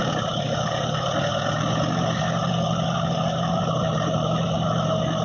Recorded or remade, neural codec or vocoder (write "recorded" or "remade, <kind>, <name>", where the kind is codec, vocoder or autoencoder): recorded